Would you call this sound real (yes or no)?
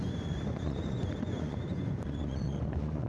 no